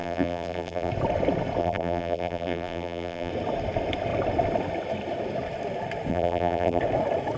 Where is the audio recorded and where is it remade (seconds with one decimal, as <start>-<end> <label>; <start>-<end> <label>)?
0.0-0.9 remade; 0.9-1.6 recorded; 1.6-3.3 remade; 3.3-6.1 recorded; 6.1-6.8 remade; 6.8-7.4 recorded